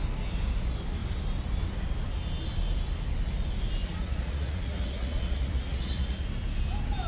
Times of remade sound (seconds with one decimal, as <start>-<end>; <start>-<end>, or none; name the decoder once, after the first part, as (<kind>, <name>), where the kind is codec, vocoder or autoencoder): 3.8-6.3 (vocoder, Vocos)